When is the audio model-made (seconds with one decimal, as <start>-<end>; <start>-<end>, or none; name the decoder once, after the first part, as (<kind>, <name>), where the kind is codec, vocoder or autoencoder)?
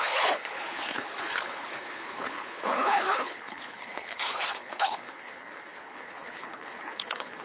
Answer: 0.0-7.4 (codec, HILCodec)